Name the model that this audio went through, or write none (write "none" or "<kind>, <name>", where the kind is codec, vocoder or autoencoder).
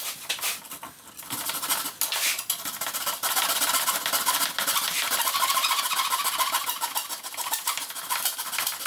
none